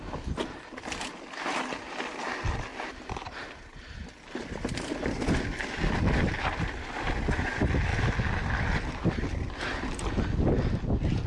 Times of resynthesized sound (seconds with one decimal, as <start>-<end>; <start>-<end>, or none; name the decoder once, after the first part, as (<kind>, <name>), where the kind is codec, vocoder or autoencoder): none